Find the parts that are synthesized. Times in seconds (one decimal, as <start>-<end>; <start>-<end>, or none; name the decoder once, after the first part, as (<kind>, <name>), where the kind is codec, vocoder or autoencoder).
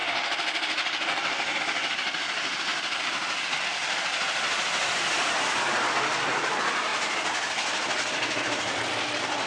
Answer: 0.0-1.6 (vocoder, BigVGAN v2); 2.7-5.9